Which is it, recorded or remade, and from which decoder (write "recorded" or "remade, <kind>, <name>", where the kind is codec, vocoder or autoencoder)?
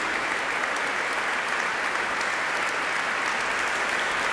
recorded